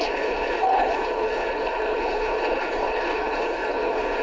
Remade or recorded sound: remade